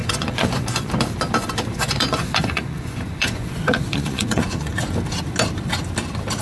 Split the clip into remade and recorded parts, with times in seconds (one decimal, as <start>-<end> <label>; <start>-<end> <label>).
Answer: 0.0-0.9 remade; 0.9-1.7 recorded; 1.7-4.8 remade; 4.8-6.4 recorded

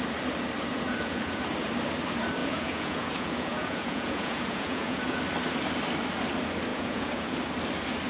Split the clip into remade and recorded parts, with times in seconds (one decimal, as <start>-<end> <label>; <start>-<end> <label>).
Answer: 0.0-0.7 recorded; 0.7-1.4 remade; 1.4-2.4 recorded; 2.4-5.2 remade; 5.2-6.7 recorded; 6.7-7.4 remade; 7.4-8.1 recorded

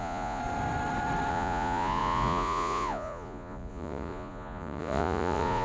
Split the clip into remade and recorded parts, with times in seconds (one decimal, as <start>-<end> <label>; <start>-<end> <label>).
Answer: 0.0-0.4 remade; 0.4-1.3 recorded; 1.3-5.6 remade

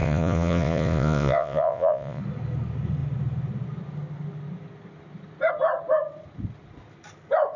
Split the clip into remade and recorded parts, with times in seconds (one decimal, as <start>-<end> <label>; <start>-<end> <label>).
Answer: 0.0-2.2 remade; 2.2-7.6 recorded

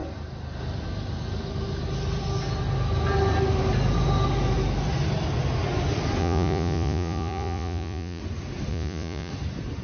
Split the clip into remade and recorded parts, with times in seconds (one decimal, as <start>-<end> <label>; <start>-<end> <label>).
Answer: 0.0-6.2 recorded; 6.2-8.2 remade; 8.2-8.7 recorded; 8.7-9.3 remade; 9.3-9.8 recorded